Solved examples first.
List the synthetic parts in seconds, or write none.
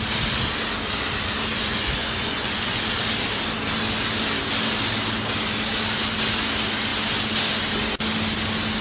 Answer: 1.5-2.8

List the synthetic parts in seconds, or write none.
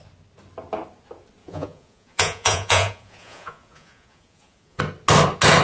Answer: 1.4-4.8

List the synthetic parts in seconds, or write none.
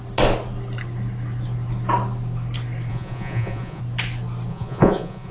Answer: 2.9-3.8; 4.5-5.3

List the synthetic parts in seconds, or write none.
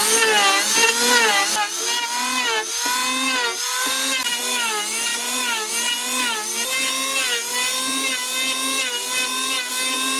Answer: none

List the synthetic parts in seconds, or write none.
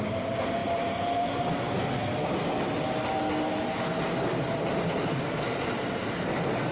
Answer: none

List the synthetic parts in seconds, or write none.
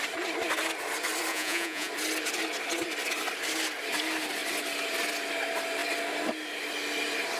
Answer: 1.3-1.9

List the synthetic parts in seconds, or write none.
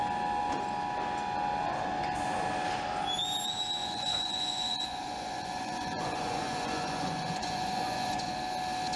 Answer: 3.8-8.3